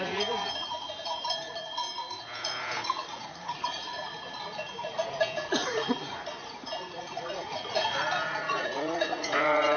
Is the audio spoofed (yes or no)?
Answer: yes